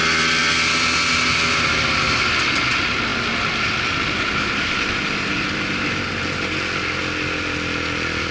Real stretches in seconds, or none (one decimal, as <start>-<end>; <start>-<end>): 0.0-8.3